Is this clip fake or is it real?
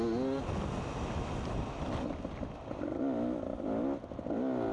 real